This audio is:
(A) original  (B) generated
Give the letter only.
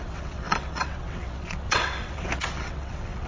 B